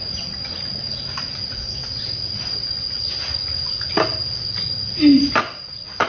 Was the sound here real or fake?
real